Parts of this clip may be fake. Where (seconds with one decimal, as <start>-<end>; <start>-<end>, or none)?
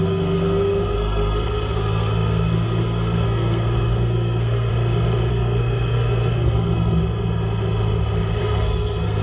0.0-4.7; 5.3-7.0; 8.4-9.2